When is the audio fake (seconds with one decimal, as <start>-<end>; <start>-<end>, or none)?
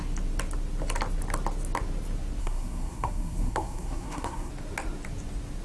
2.4-4.5